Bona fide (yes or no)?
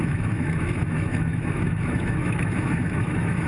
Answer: no